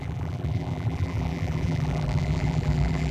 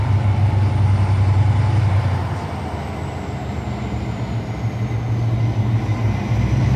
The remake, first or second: first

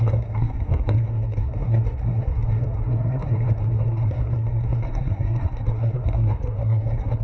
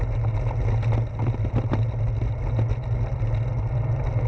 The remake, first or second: first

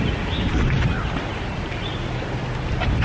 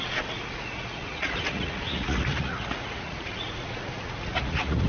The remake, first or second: second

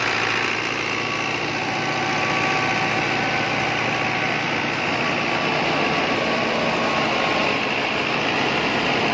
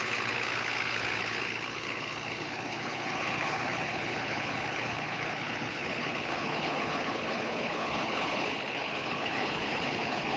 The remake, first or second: second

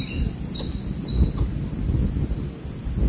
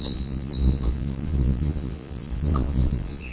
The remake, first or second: second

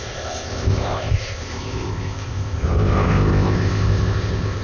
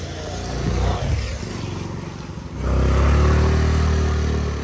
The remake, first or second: first